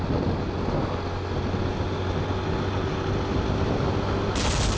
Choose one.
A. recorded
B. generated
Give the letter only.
A